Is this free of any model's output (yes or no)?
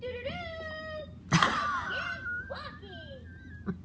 yes